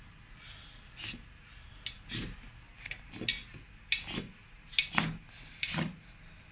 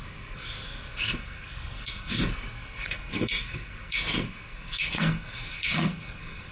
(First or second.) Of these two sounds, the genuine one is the first